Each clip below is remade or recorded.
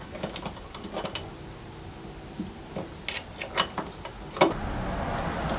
recorded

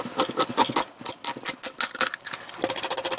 recorded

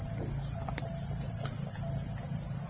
recorded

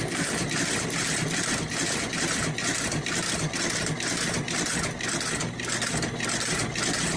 recorded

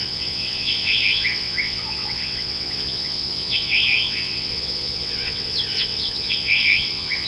remade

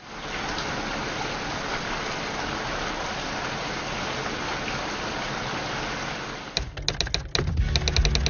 recorded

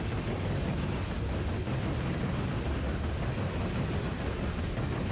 recorded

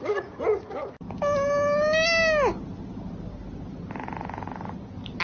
recorded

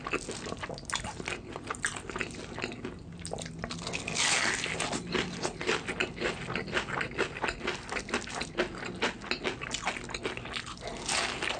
recorded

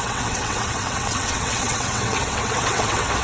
remade